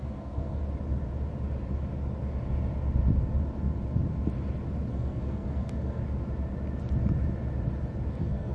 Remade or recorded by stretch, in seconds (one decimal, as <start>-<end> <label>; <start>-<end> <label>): 0.0-0.6 remade; 0.6-4.9 recorded; 4.9-6.0 remade; 6.0-8.1 recorded; 8.1-8.5 remade